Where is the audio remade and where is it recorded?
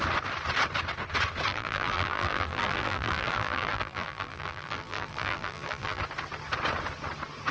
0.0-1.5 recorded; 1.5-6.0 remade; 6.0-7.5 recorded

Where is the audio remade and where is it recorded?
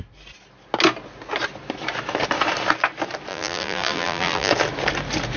0.0-3.3 recorded; 3.3-4.5 remade; 4.5-5.4 recorded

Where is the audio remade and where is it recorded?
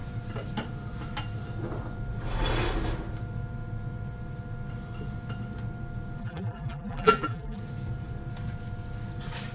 0.0-6.2 recorded; 6.2-7.6 remade; 7.6-9.5 recorded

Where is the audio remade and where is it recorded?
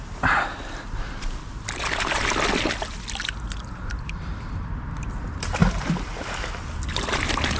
0.0-7.6 remade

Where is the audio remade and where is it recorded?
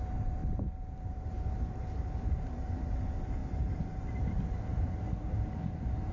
0.0-6.1 remade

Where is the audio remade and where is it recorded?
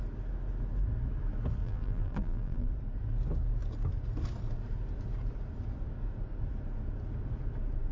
0.0-1.6 recorded; 1.6-2.7 remade; 2.7-7.9 recorded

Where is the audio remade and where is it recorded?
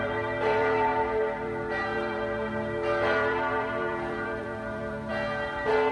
0.0-5.1 remade; 5.1-5.9 recorded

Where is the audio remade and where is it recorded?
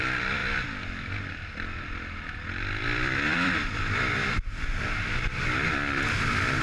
0.0-0.4 remade; 0.4-1.3 recorded; 1.3-6.6 remade